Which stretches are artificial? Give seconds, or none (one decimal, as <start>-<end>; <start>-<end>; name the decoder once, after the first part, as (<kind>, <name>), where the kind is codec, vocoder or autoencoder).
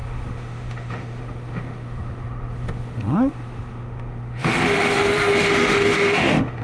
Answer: 0.0-6.6 (autoencoder, DAC-VAE)